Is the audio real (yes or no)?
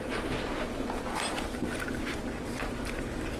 yes